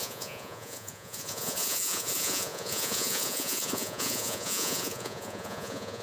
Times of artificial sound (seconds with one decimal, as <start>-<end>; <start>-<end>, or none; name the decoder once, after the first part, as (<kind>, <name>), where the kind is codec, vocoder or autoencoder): 0.0-6.0 (vocoder, Vocos)